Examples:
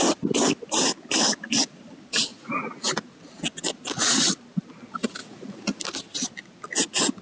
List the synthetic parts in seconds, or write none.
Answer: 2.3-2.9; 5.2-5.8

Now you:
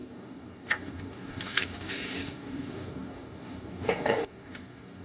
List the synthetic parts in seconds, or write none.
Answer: 0.0-5.0

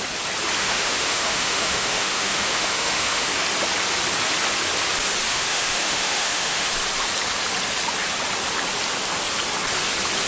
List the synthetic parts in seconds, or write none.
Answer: 0.6-3.3; 5.3-6.7

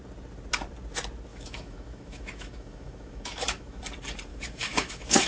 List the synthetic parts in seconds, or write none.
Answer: 1.3-3.8; 4.3-5.3

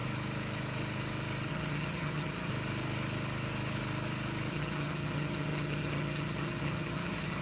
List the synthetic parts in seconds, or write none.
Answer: 1.5-2.5; 4.5-7.4